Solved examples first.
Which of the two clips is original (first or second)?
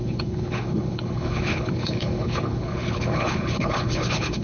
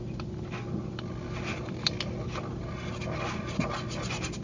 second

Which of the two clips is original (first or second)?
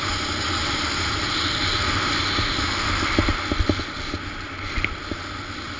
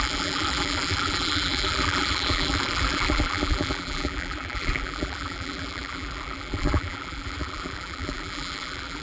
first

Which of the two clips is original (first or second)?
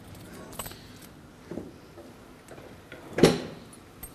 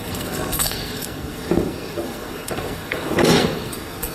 first